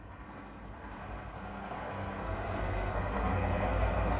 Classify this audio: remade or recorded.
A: remade